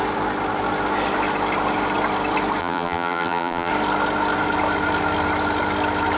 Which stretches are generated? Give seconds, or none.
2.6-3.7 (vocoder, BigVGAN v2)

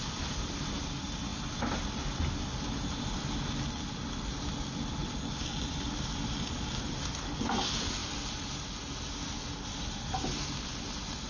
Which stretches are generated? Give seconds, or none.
5.0-6.1 (vocoder, BigVGAN v2)

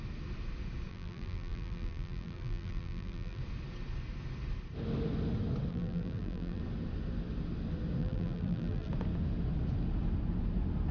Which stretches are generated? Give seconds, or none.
0.9-3.4 (vocoder, BigVGAN v2); 5.7-6.6; 8.0-8.9

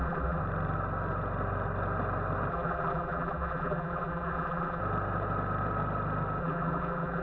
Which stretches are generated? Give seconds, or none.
0.0-0.4 (vocoder, BigVGAN v2); 2.5-4.8; 6.4-7.2

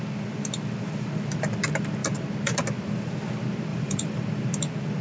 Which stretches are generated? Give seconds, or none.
3.7-4.2 (vocoder, BigVGAN v2)